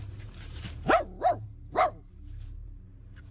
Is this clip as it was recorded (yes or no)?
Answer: no